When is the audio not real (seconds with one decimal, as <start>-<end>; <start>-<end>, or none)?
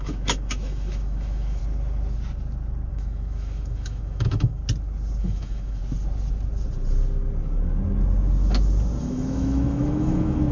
0.0-1.6; 2.9-4.6; 5.2-5.8; 9.0-10.5